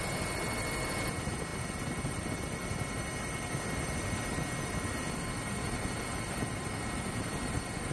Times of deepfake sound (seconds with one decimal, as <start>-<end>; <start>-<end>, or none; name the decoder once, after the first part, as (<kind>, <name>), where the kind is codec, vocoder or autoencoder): none